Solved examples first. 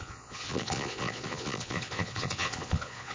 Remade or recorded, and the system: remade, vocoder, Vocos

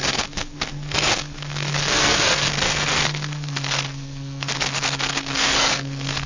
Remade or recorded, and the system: remade, codec, SNAC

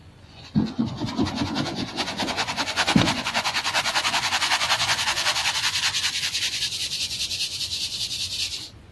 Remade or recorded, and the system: remade, vocoder, Vocos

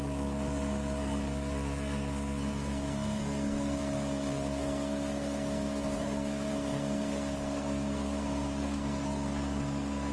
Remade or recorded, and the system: remade, codec, SNAC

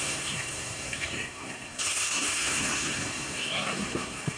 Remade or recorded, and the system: remade, codec, SNAC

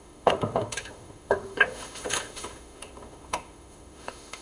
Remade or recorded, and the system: remade, autoencoder, DAC-VAE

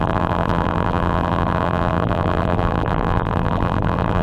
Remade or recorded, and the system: remade, vocoder, BigVGAN v2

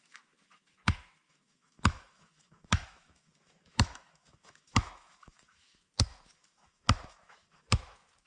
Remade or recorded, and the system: remade, autoencoder, DAC-VAE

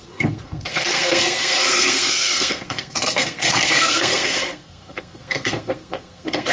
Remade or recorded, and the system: remade, codec, SNAC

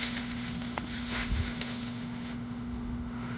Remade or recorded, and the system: remade, autoencoder, DAC-VAE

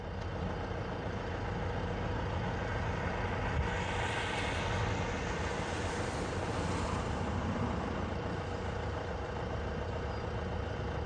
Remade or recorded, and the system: recorded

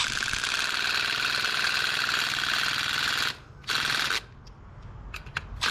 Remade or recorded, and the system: recorded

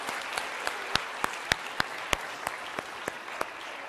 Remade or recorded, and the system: recorded